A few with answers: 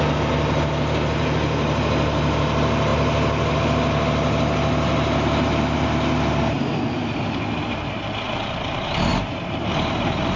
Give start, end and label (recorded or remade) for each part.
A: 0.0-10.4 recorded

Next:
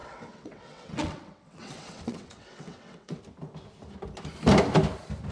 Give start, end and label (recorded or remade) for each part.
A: 0.0-3.2 remade; 3.2-5.3 recorded

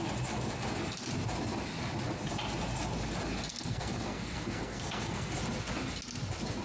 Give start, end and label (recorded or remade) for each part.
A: 0.0-3.5 recorded; 3.5-5.3 remade; 5.3-6.6 recorded

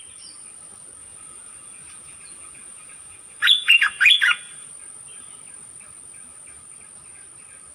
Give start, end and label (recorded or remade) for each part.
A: 0.0-1.0 recorded; 1.0-4.7 remade; 4.7-7.7 recorded

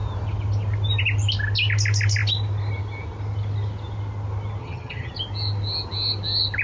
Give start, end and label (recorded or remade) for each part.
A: 0.0-4.6 recorded; 4.6-5.1 remade; 5.1-6.6 recorded

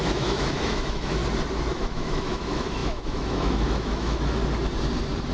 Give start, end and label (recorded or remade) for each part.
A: 0.0-1.2 remade; 1.2-1.7 recorded; 1.7-4.4 remade; 4.4-5.3 recorded